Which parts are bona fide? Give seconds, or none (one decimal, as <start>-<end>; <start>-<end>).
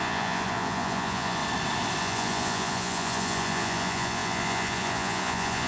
1.4-2.0